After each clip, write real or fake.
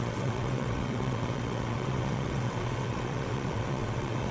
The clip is fake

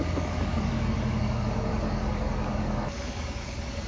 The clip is fake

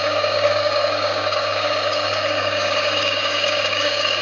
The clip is fake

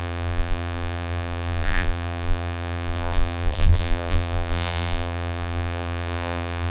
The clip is fake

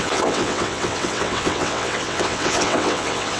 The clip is fake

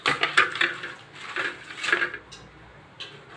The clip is real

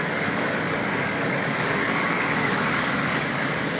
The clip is fake